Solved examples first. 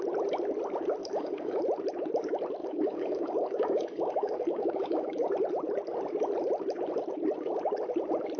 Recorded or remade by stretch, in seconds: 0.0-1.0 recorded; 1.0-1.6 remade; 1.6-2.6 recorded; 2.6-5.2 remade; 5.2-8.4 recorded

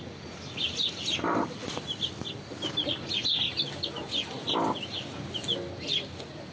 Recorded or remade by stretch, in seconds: 0.0-6.5 recorded

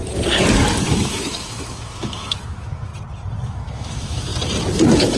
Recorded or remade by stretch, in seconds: 0.0-0.8 recorded; 0.8-2.9 remade; 2.9-3.5 recorded; 3.5-4.3 remade; 4.3-5.2 recorded

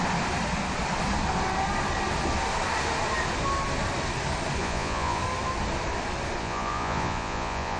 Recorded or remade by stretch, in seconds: 0.0-4.6 recorded; 4.6-5.2 remade; 5.2-6.4 recorded; 6.4-7.8 remade

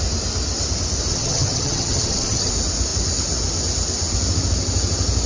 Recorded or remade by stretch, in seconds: 0.0-1.1 recorded; 1.1-2.5 remade; 2.5-5.3 recorded

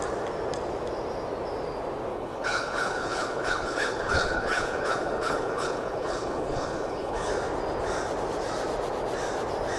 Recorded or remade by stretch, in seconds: 0.0-2.1 recorded; 2.1-7.3 remade; 7.3-9.8 recorded

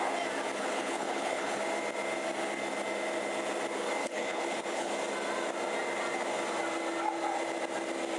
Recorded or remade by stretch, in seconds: 0.0-0.6 recorded; 0.6-1.6 remade; 1.6-4.0 recorded; 4.0-4.9 remade; 4.9-8.2 recorded